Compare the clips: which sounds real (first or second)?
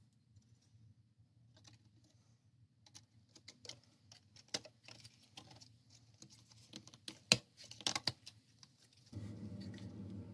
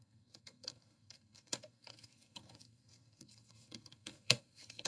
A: first